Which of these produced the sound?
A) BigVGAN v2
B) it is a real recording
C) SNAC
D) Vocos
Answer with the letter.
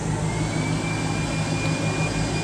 B